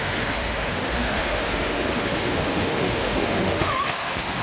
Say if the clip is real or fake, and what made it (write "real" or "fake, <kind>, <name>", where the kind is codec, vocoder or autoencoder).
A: fake, autoencoder, DAC-VAE